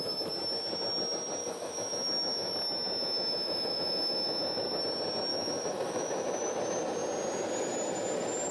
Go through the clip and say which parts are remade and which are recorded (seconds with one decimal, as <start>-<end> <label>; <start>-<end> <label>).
0.0-1.4 recorded; 1.4-4.8 remade; 4.8-5.3 recorded; 5.3-6.6 remade; 6.6-8.5 recorded